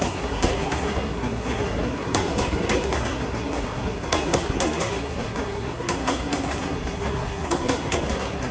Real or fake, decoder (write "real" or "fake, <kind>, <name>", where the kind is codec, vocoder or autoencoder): fake, codec, SNAC